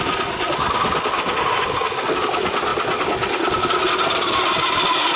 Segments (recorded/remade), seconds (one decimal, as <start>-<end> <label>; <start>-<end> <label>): 0.0-5.2 recorded